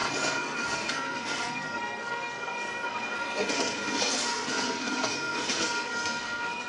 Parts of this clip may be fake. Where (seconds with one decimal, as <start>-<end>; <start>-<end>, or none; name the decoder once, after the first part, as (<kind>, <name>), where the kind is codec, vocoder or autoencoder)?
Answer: 0.0-6.7 (codec, SNAC)